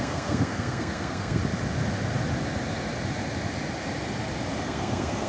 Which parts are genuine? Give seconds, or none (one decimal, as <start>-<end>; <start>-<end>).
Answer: 1.4-4.6